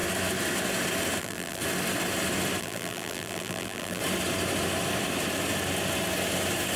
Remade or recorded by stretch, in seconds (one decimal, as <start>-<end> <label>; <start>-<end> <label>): 0.0-1.2 recorded; 1.2-1.6 remade; 1.6-2.6 recorded; 2.6-4.0 remade; 4.0-6.8 recorded